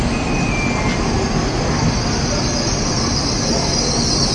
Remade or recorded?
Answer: recorded